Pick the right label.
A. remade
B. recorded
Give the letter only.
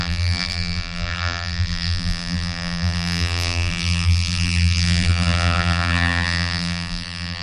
A